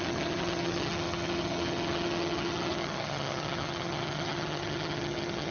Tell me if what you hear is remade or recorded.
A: remade